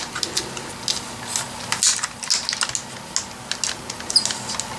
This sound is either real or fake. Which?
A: real